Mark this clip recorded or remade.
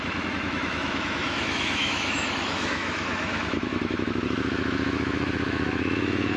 remade